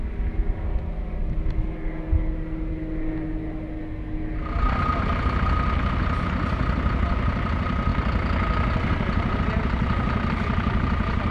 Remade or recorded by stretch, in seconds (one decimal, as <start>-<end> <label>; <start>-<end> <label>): 0.0-11.3 recorded